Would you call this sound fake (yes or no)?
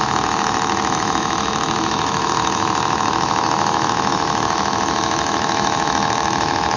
yes